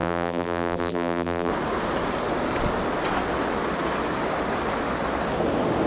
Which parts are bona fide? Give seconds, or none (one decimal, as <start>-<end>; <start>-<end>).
1.5-5.9